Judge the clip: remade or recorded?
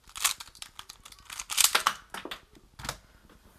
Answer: recorded